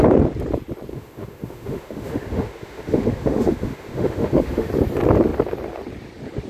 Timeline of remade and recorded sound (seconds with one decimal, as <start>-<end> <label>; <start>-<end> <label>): 0.0-0.9 recorded; 0.9-4.7 remade; 4.7-6.5 recorded